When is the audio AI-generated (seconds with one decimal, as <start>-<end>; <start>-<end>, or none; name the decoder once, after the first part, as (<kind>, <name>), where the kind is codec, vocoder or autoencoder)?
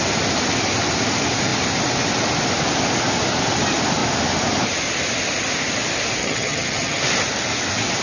6.2-7.0 (vocoder, HiFi-GAN)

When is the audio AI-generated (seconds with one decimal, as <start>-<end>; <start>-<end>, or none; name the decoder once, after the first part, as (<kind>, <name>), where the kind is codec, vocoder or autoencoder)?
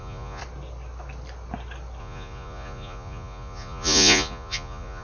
0.0-0.4 (vocoder, Vocos); 2.0-5.0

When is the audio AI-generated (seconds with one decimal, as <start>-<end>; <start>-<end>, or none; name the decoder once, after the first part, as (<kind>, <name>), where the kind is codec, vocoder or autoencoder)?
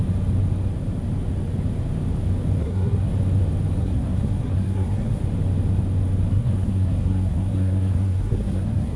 2.6-3.1 (codec, SNAC); 3.8-5.2; 6.3-9.0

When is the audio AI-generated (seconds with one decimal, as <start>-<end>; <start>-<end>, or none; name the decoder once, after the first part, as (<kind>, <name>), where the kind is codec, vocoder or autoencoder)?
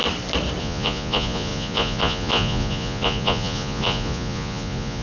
0.6-5.0 (vocoder, Vocos)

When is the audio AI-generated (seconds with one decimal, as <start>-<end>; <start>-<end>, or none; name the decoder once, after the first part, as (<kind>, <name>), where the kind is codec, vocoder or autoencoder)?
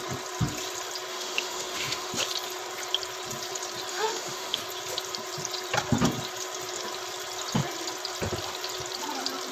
1.1-2.1 (autoencoder, DAC-VAE); 3.9-4.6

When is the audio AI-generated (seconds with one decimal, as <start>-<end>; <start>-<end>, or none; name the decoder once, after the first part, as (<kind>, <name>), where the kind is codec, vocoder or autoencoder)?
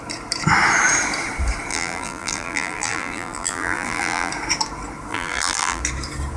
1.7-4.3 (vocoder, BigVGAN v2); 5.1-5.8